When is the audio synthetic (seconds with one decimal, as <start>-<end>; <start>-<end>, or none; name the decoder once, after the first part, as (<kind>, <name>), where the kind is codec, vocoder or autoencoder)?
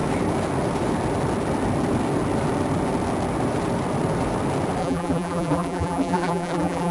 4.8-6.9 (vocoder, BigVGAN v2)